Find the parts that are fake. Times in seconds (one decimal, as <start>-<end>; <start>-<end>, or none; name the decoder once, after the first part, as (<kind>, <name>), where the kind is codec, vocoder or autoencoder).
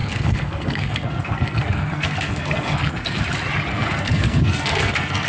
0.0-3.2 (codec, SNAC); 3.7-5.3